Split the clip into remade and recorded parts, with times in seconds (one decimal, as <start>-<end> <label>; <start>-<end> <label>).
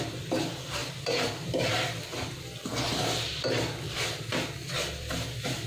0.0-0.8 recorded; 0.8-1.7 remade; 1.7-5.7 recorded